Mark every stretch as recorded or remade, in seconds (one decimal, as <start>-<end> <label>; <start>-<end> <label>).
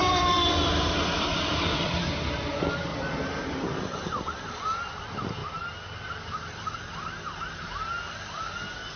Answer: 0.0-2.3 remade; 2.3-2.9 recorded; 2.9-3.8 remade; 3.8-9.0 recorded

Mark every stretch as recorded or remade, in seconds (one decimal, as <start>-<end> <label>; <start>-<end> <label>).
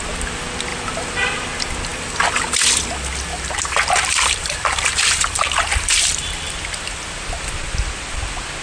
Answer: 0.0-0.7 recorded; 0.7-1.4 remade; 1.4-3.3 recorded; 3.3-6.5 remade; 6.5-8.6 recorded